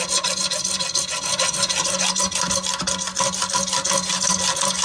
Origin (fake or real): real